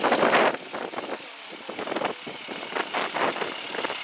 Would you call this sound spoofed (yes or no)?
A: no